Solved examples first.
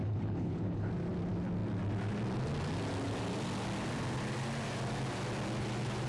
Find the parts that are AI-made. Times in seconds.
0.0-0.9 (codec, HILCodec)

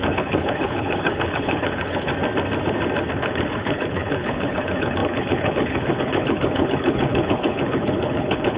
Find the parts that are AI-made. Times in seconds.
0.0-2.1 (codec, HILCodec); 3.1-8.6